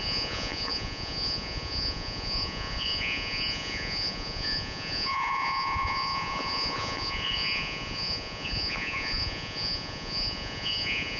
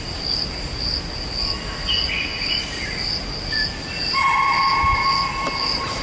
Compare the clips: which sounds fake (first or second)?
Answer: first